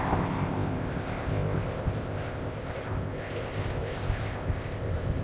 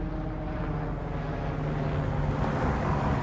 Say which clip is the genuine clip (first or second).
second